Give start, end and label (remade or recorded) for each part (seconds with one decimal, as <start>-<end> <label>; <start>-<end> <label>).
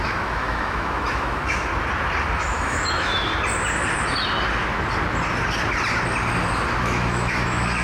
0.0-1.7 remade; 1.7-2.4 recorded; 2.4-3.3 remade; 3.3-6.8 recorded; 6.8-7.8 remade